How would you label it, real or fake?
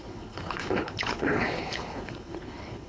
fake